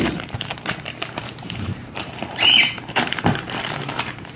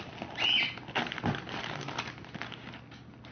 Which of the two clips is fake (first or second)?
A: first